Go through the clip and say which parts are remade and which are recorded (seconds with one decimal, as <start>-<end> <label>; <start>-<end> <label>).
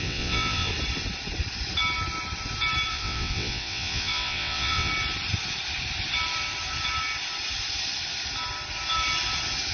0.0-0.7 remade; 0.7-2.9 recorded; 2.9-4.9 remade; 4.9-9.7 recorded